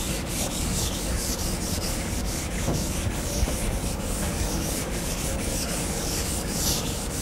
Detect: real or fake fake